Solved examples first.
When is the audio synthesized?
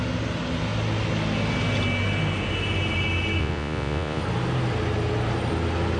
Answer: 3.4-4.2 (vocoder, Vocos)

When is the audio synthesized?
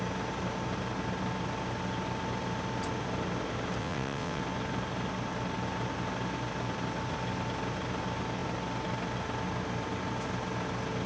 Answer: 3.8-4.4 (vocoder, WaveNeXt)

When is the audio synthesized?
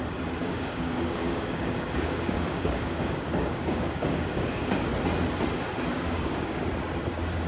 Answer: 0.4-4.9 (codec, DAC); 5.9-6.6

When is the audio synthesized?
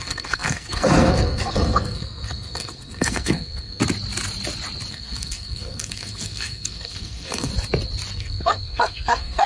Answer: 0.0-3.8 (codec, SNAC); 4.9-7.5; 8.1-9.5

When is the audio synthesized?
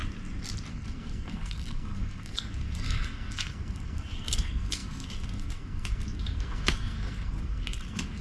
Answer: 0.7-8.2 (codec, SNAC)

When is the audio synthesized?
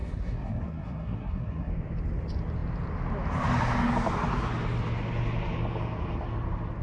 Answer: 0.0-1.7 (codec, SNAC)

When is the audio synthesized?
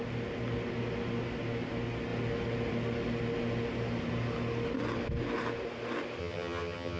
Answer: 6.2-7.0 (vocoder, HiFi-GAN)